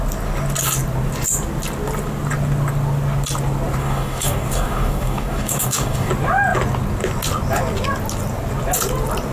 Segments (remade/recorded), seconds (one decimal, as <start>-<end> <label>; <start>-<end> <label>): 0.0-3.8 recorded; 3.8-6.1 remade; 6.1-9.3 recorded